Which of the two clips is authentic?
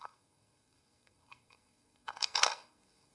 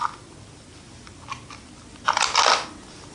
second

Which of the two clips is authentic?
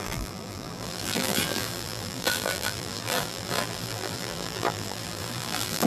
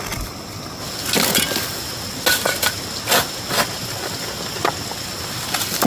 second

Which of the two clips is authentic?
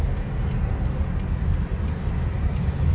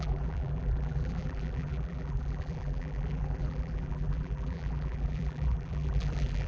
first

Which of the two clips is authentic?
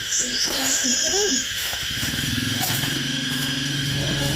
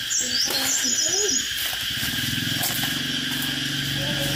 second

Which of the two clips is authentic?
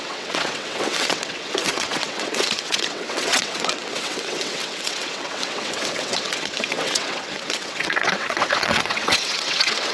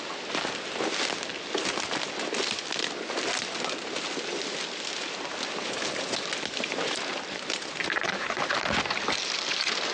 second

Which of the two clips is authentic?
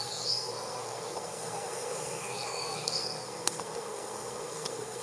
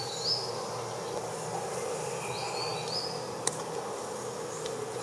second